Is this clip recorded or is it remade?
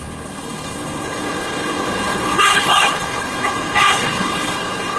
remade